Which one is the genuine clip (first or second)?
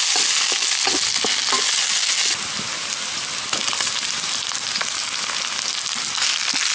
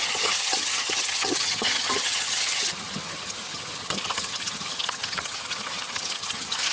first